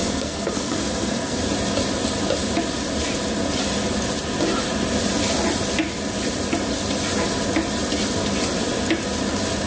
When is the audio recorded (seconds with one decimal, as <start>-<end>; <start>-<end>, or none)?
1.4-9.7